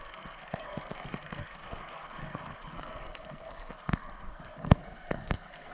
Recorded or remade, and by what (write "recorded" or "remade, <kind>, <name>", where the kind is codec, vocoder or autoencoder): remade, codec, SNAC